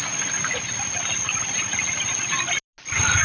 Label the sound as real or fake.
real